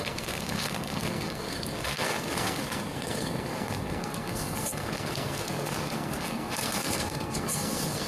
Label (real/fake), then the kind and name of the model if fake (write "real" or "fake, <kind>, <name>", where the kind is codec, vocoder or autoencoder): fake, codec, SNAC